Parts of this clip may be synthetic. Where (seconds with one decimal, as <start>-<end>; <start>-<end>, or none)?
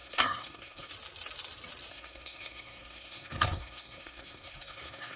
0.0-0.9; 1.9-5.2